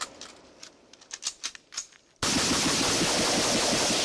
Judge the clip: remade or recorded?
recorded